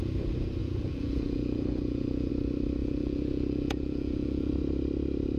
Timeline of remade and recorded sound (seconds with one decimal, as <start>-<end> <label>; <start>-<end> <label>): 0.0-0.6 recorded; 0.6-2.3 remade; 2.3-2.8 recorded; 2.8-4.5 remade; 4.5-5.4 recorded